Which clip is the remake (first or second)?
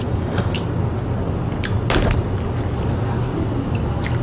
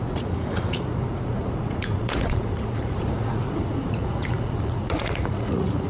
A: second